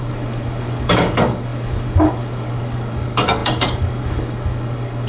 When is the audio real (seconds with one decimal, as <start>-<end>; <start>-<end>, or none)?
none